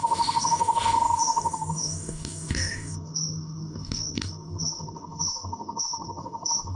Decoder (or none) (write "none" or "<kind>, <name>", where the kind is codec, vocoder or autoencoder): codec, DAC